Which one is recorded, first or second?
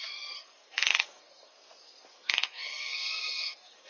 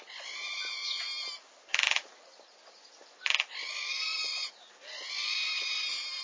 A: second